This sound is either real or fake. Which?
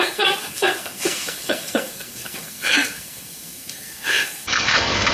fake